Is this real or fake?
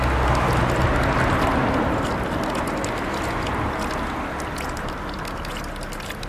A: real